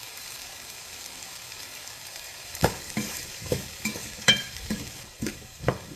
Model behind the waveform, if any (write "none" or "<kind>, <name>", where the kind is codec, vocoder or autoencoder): codec, DAC